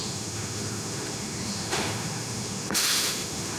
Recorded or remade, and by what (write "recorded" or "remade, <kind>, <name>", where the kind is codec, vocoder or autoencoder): remade, autoencoder, DAC-VAE